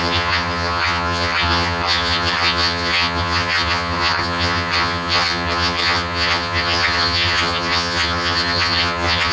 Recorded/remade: remade